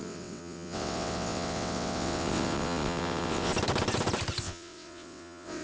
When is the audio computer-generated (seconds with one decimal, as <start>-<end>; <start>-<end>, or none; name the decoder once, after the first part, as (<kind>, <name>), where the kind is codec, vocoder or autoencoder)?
0.0-3.5 (vocoder, WaveNeXt); 4.4-5.6